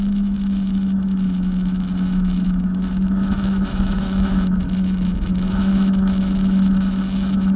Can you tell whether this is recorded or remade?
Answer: remade